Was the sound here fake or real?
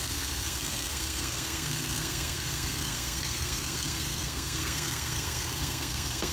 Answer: fake